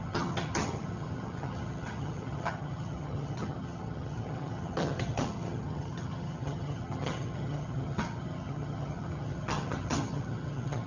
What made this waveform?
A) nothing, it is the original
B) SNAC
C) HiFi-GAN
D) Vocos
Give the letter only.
C